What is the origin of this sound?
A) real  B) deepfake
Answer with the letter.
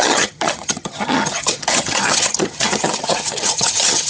B